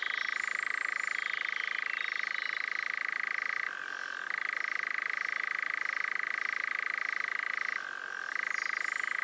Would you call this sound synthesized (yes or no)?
no